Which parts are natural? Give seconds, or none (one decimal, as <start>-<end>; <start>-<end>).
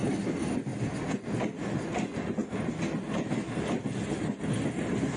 0.0-5.2